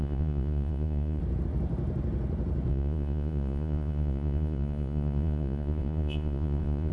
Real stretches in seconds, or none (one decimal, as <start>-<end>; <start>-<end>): 1.2-2.7